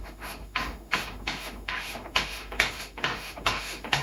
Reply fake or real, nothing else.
fake